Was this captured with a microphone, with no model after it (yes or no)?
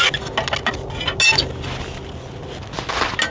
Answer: yes